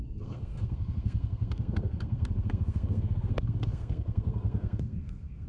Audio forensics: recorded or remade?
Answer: remade